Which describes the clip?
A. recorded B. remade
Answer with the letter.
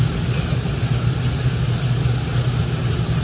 A